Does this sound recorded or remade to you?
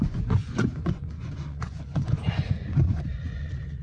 remade